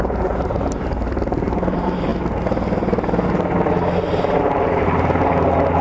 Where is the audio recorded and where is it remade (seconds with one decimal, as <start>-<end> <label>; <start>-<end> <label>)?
0.0-2.1 remade; 2.1-5.8 recorded